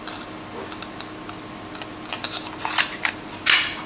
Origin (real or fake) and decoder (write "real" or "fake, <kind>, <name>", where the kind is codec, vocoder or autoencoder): real